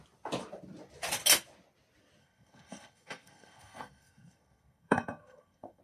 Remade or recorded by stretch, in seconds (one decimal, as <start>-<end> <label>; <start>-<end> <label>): 0.0-2.2 recorded; 2.2-5.8 remade